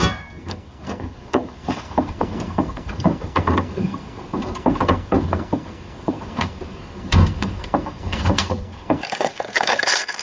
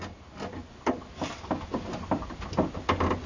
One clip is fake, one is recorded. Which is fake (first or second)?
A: first